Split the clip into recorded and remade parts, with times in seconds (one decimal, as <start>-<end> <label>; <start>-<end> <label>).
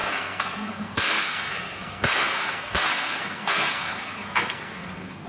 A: 0.0-5.3 remade